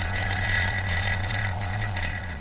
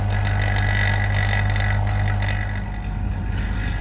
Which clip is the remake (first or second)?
first